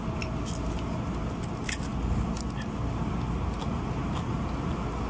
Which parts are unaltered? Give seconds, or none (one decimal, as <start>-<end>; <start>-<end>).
0.0-5.1